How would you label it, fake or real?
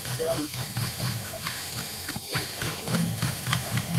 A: fake